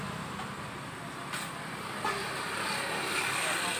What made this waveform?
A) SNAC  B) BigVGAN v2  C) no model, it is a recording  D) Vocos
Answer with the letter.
C